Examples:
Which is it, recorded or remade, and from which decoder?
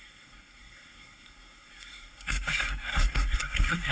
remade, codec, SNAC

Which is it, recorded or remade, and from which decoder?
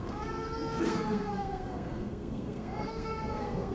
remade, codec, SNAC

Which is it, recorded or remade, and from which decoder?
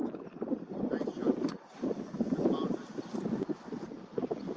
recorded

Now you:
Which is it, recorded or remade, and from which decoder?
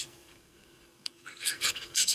remade, codec, SNAC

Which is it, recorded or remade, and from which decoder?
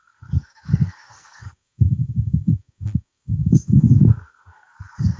remade, codec, SNAC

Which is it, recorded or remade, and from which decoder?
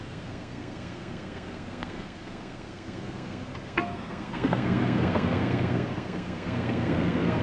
remade, codec, SNAC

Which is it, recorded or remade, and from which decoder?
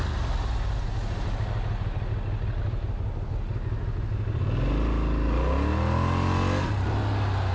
recorded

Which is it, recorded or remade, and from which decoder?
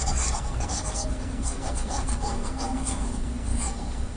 remade, codec, SNAC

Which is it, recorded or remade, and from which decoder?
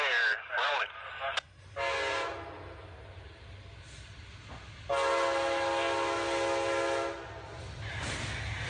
recorded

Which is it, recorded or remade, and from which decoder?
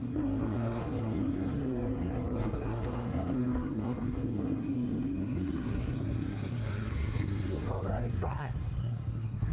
remade, codec, SNAC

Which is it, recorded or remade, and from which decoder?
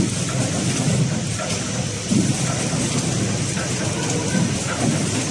recorded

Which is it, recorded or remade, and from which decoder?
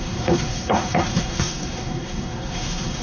remade, codec, SNAC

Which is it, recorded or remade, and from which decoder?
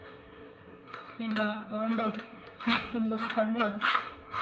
remade, codec, SNAC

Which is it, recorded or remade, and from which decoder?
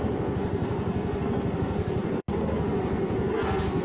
remade, codec, SNAC